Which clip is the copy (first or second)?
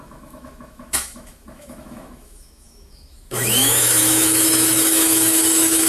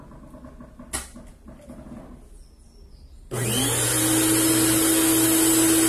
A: first